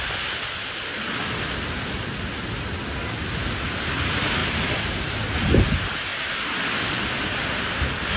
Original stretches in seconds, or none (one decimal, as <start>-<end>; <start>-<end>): 0.0-8.2